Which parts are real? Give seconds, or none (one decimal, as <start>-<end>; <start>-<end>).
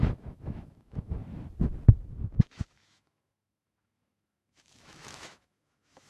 1.2-2.4